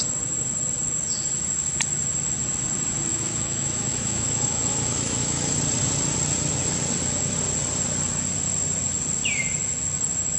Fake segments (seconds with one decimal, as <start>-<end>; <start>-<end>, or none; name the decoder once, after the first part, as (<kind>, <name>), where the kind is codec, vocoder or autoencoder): 3.1-5.6 (autoencoder, DAC-VAE)